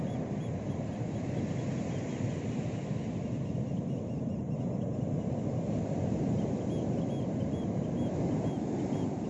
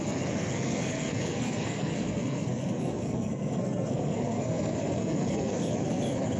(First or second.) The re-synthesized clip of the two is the second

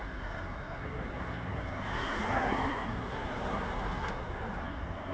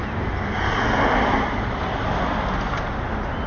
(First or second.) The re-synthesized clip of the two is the first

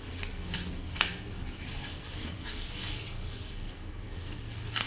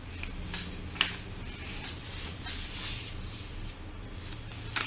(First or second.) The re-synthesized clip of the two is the first